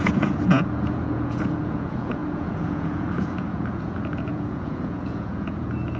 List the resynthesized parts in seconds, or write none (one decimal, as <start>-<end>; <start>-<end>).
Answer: 0.0-6.0